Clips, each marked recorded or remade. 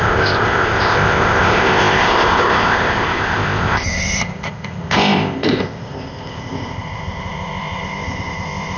remade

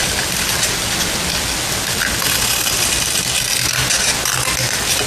recorded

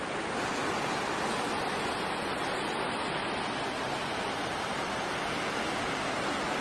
recorded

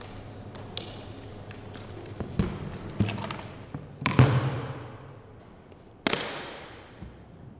recorded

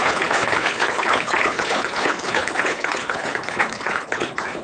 remade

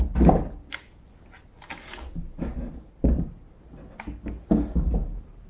recorded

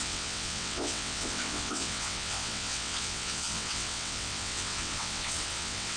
remade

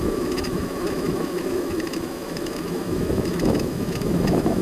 remade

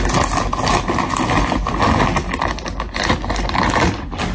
recorded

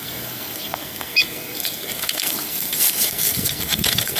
remade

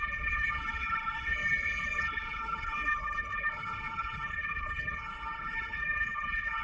remade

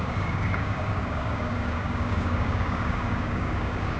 remade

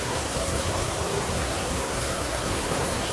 remade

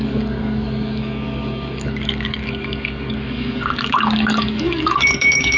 remade